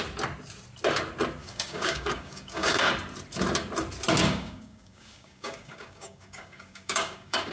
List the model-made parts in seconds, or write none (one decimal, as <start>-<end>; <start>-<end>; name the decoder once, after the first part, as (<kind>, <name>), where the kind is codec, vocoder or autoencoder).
1.4-2.9 (codec, DAC); 4.2-7.5